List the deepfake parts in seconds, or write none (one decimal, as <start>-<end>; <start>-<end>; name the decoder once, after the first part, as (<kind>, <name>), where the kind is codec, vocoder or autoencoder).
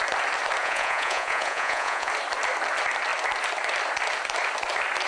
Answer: 0.6-2.1 (vocoder, Vocos)